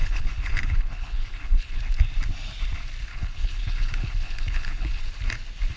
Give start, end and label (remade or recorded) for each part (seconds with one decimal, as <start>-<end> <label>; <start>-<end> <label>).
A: 0.0-1.8 remade; 1.8-3.1 recorded; 3.1-5.0 remade; 5.0-5.8 recorded